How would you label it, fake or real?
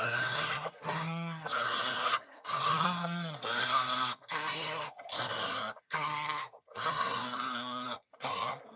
fake